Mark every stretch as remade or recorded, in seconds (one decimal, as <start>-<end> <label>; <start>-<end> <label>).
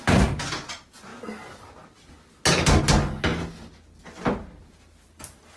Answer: 0.0-5.6 recorded